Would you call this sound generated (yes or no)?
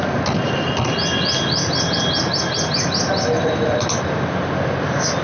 no